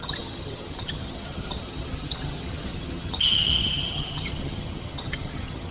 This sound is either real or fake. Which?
fake